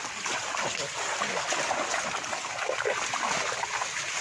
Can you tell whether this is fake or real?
real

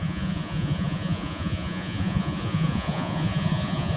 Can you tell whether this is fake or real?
fake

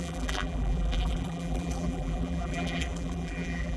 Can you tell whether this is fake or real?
fake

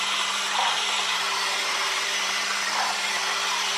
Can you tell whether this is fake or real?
fake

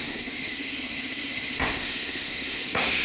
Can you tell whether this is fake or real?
fake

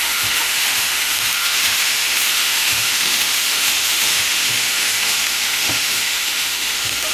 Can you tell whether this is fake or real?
fake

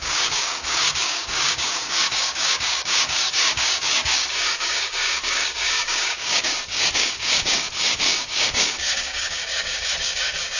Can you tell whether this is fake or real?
fake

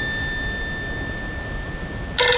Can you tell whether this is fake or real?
real